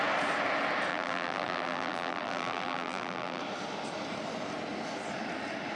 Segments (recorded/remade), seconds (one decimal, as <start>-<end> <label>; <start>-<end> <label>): 0.0-0.9 recorded; 0.9-3.4 remade; 3.4-5.8 recorded